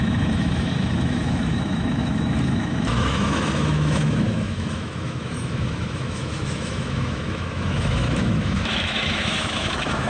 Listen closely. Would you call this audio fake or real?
fake